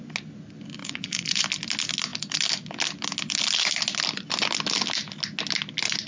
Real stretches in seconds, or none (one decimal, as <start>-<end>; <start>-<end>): 0.0-0.8; 1.4-6.1